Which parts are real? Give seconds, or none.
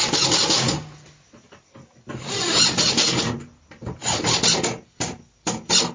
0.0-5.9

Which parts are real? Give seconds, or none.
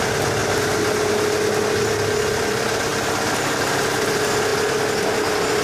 0.0-5.6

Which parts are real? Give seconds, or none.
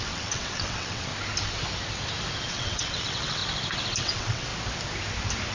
1.1-2.5; 3.4-4.0; 4.5-5.5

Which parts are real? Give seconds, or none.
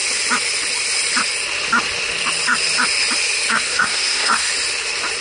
0.0-3.5; 4.5-5.2